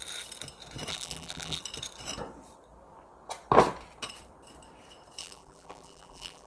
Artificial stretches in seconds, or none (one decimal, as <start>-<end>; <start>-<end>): 0.9-1.6; 5.2-6.5